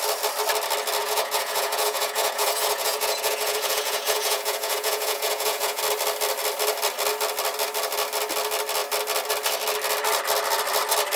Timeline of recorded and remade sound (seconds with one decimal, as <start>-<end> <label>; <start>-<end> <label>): 0.0-1.0 recorded; 1.0-5.8 remade; 5.8-11.2 recorded